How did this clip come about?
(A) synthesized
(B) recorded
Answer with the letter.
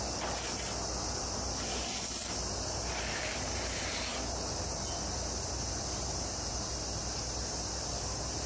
B